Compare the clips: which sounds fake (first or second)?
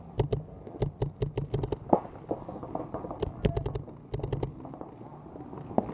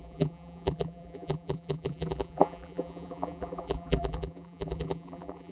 second